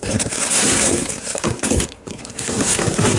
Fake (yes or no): yes